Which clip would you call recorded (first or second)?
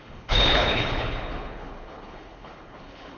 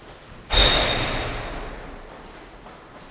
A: second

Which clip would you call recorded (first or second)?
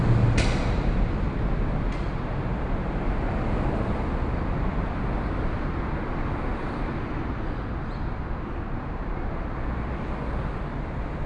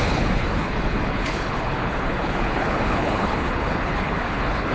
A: first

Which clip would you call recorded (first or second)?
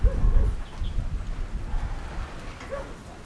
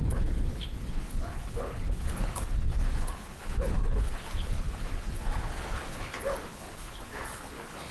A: first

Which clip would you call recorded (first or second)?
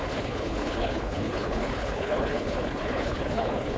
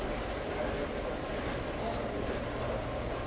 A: second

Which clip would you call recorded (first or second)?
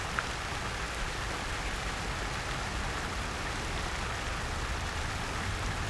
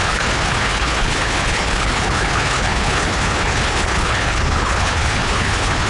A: first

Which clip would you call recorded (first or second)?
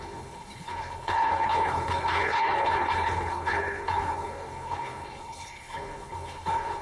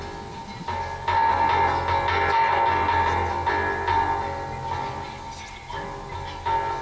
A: second